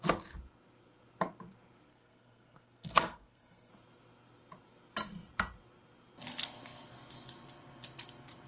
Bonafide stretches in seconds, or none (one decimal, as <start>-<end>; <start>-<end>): 0.0-1.9; 3.7-8.5